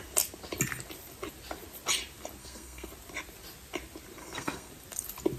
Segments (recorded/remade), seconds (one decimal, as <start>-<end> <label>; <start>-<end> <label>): 0.0-2.4 recorded; 2.4-2.9 remade; 2.9-4.2 recorded; 4.2-4.7 remade; 4.7-5.4 recorded